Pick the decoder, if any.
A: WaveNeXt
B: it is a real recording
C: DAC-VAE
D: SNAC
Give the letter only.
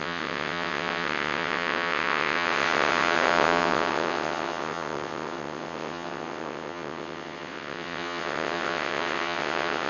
A